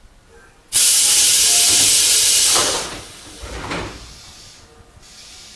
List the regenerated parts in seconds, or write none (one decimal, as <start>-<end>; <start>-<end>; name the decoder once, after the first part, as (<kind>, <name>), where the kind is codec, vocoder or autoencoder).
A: none